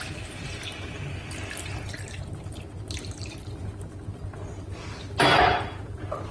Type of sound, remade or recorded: recorded